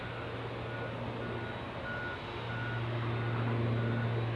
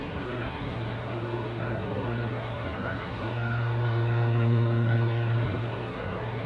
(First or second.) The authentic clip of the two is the first